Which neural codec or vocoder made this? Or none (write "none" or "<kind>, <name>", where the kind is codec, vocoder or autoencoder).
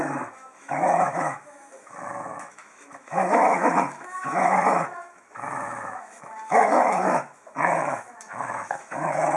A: autoencoder, DAC-VAE